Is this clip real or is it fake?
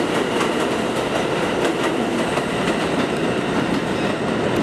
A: real